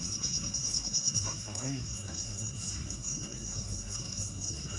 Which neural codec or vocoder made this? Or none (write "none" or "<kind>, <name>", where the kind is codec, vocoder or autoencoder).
codec, SNAC